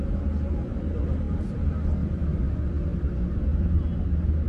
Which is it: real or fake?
real